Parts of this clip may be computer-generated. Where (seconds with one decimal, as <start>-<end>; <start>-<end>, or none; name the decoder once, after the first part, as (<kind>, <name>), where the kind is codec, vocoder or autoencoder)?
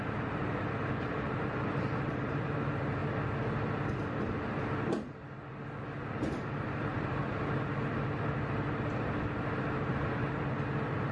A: 0.0-3.0 (vocoder, BigVGAN v2); 6.1-7.2; 9.9-11.1